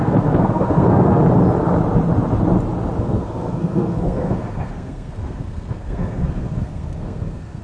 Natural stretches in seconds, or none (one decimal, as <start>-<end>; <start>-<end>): 1.2-3.0